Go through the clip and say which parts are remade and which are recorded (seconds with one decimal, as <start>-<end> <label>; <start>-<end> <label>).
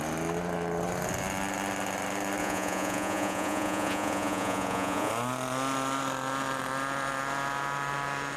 0.0-2.4 recorded; 2.4-5.1 remade; 5.1-8.4 recorded